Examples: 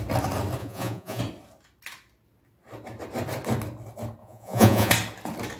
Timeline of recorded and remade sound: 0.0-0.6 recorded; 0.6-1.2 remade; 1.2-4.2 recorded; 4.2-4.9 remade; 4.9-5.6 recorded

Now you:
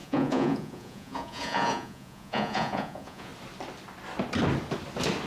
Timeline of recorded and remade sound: 0.0-3.3 remade; 3.3-5.3 recorded

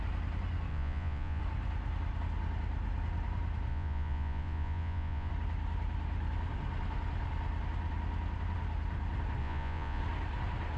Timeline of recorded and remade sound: 0.0-0.7 recorded; 0.7-1.4 remade; 1.4-3.7 recorded; 3.7-5.3 remade; 5.3-9.4 recorded; 9.4-10.0 remade; 10.0-10.8 recorded

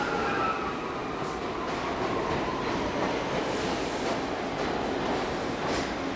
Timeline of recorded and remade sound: 0.0-6.2 recorded

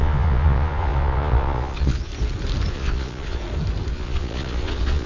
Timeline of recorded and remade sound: 0.0-2.1 remade; 2.1-2.7 recorded; 2.7-3.4 remade; 3.4-3.9 recorded; 3.9-5.1 remade

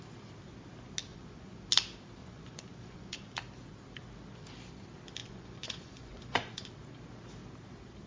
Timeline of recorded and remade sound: 0.0-1.1 recorded; 1.1-1.6 remade; 1.6-2.2 recorded; 2.2-3.3 remade; 3.3-5.2 recorded; 5.2-6.7 remade; 6.7-8.1 recorded

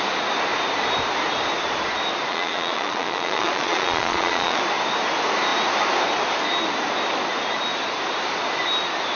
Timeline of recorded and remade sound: 0.0-2.3 recorded; 2.3-4.6 remade; 4.6-9.2 recorded

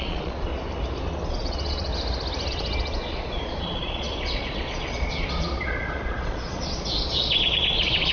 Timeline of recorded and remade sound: 0.0-0.5 remade; 0.5-1.3 recorded; 1.3-1.9 remade; 1.9-2.5 recorded; 2.5-8.1 remade